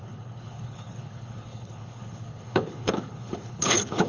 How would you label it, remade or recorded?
remade